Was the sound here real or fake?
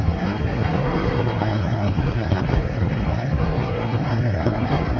fake